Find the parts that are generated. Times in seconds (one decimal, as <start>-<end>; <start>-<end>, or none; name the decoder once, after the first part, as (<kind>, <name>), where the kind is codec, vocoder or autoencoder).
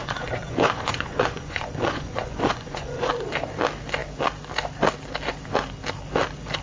0.0-3.1 (vocoder, Vocos)